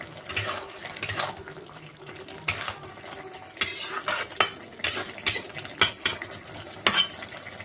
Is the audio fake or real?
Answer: real